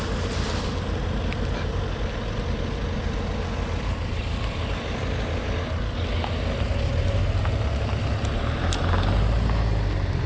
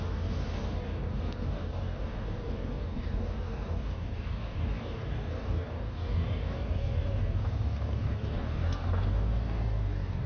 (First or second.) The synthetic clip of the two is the second